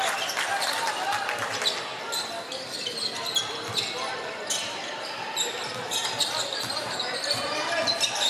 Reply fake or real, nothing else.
real